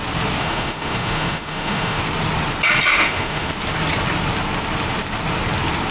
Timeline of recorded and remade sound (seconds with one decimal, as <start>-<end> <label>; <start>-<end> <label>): 0.0-0.4 recorded; 0.4-2.0 remade; 2.0-2.9 recorded; 2.9-3.5 remade; 3.5-5.9 recorded